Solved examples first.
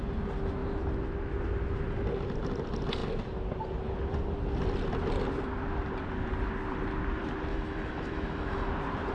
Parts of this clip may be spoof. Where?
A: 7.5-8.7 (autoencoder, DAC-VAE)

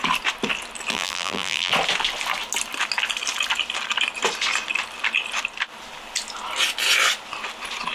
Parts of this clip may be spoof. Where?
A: 0.9-1.7 (vocoder, BigVGAN v2)

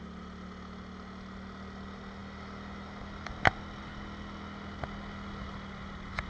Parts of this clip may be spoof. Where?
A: none

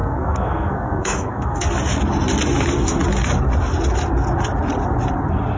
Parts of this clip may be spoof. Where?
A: 0.0-1.7 (codec, SNAC)

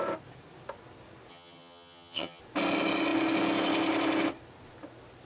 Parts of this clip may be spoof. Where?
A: 1.3-2.4 (vocoder, HiFi-GAN)